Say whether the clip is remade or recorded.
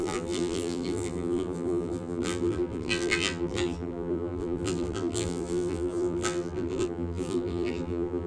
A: remade